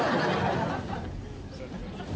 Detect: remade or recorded recorded